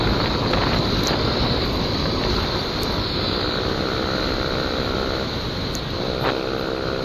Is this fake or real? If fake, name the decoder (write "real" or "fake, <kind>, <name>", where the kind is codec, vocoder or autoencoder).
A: real